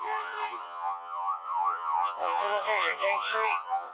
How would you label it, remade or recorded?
remade